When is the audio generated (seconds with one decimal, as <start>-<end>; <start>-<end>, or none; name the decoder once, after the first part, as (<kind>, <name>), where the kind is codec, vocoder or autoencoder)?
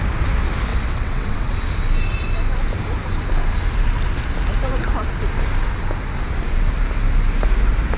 0.7-1.5 (vocoder, WaveNeXt)